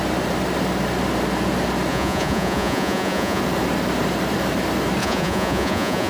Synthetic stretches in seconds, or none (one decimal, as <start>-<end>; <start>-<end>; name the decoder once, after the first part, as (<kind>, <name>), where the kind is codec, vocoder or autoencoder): 1.9-3.4 (vocoder, Vocos); 5.0-6.1